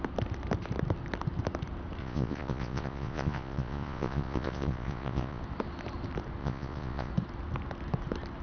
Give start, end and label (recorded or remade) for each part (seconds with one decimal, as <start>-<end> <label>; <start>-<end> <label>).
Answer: 0.0-2.0 recorded; 2.0-5.4 remade; 5.4-6.4 recorded; 6.4-7.1 remade; 7.1-8.4 recorded